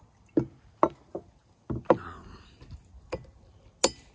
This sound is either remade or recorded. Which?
recorded